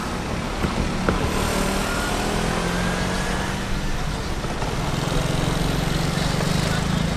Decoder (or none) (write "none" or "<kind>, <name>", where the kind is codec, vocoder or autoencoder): none